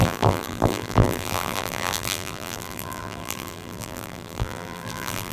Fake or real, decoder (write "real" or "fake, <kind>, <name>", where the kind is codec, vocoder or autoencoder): fake, vocoder, BigVGAN v2